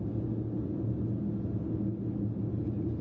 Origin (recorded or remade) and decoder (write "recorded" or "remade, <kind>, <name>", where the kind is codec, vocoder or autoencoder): recorded